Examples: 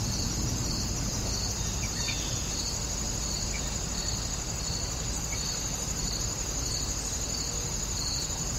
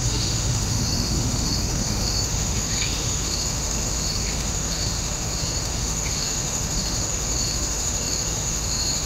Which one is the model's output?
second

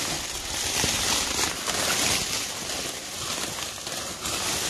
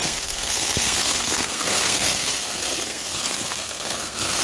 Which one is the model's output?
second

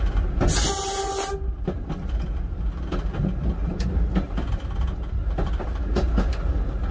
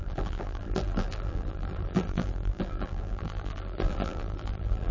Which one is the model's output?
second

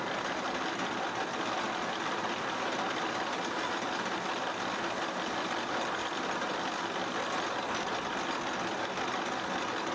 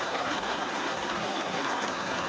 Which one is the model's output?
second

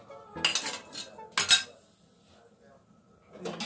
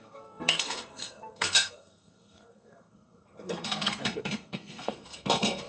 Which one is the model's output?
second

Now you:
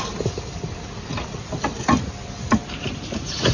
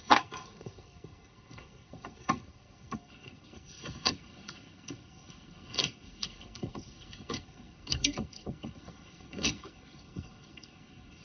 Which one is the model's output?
second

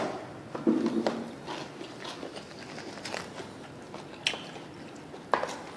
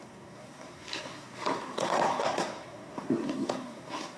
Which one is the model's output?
second